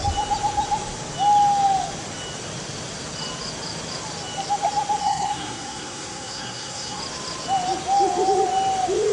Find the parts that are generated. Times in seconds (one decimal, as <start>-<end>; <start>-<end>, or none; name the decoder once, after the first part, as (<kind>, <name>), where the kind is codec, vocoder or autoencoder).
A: 5.0-7.0 (codec, SNAC)